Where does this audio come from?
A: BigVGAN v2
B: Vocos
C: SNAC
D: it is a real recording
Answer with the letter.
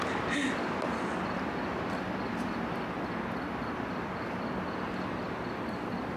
D